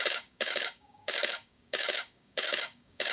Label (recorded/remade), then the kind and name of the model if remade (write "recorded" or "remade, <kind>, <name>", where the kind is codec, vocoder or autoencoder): remade, codec, DAC